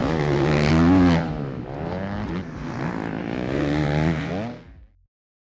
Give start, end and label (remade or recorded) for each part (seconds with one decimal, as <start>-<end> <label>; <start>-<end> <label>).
0.0-0.7 remade; 0.7-3.2 recorded; 3.2-4.3 remade; 4.3-5.4 recorded